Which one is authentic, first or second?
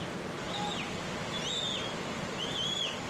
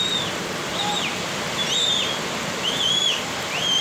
first